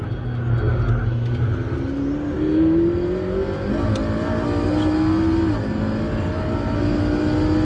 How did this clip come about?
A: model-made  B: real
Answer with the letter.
B